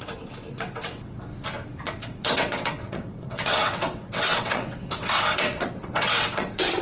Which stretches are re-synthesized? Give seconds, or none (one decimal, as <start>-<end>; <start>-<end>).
0.0-1.3; 1.8-6.8